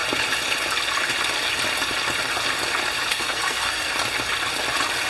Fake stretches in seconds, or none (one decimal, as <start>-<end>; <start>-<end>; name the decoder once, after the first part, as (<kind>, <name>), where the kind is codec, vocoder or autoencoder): 3.1-3.9 (codec, SNAC)